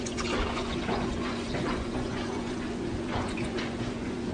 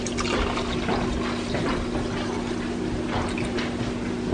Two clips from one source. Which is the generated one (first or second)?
first